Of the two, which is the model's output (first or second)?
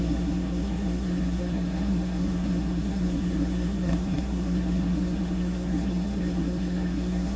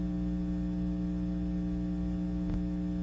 first